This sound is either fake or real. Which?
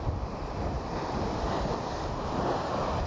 real